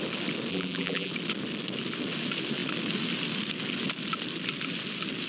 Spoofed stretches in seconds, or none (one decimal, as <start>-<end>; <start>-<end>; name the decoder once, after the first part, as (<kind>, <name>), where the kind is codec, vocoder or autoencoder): 0.5-1.1 (vocoder, BigVGAN v2)